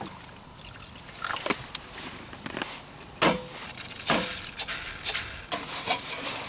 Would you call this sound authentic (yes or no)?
yes